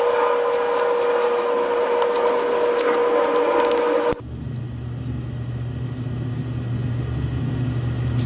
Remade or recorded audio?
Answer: recorded